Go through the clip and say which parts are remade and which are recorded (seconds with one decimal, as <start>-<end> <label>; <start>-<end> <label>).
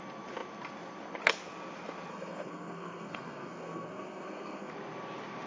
0.0-2.1 recorded; 2.1-4.7 remade; 4.7-5.5 recorded